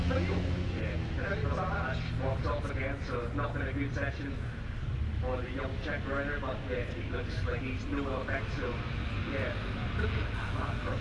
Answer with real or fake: real